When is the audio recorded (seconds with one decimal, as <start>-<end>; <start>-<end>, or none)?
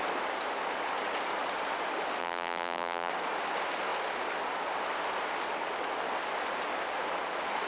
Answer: 0.0-2.2; 3.1-7.7